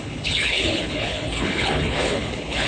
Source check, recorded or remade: remade